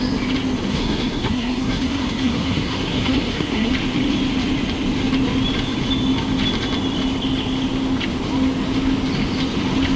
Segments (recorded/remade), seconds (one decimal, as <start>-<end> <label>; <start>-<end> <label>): 0.0-0.7 recorded; 0.7-3.7 remade; 3.7-10.0 recorded